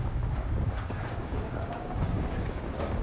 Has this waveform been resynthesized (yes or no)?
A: yes